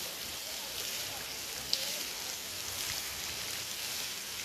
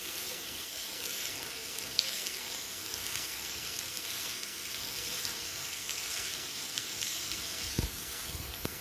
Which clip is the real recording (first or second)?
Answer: first